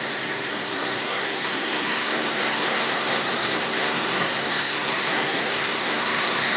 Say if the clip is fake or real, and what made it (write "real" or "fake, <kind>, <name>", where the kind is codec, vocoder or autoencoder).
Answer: fake, codec, SNAC